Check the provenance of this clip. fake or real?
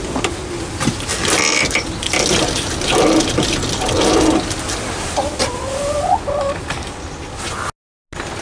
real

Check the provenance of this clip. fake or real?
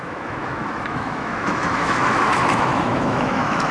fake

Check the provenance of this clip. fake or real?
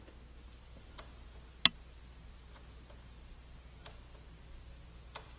real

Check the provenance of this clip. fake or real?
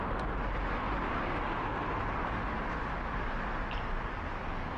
real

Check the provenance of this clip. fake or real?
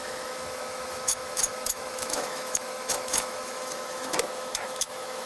fake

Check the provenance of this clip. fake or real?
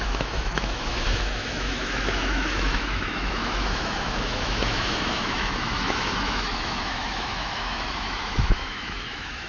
fake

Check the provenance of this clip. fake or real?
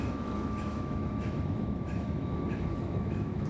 fake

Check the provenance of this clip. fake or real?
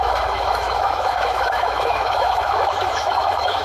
fake